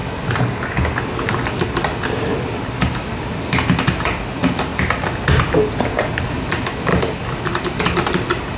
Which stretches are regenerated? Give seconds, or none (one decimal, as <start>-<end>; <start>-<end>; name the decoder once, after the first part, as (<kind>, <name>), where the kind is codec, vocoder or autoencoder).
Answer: 4.7-5.6 (vocoder, BigVGAN v2); 6.9-7.5